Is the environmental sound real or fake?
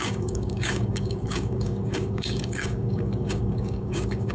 fake